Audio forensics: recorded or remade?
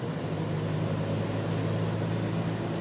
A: recorded